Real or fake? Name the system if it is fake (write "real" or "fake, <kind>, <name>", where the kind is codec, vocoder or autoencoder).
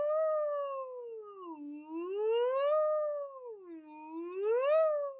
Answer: real